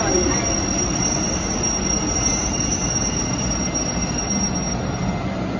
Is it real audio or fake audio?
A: real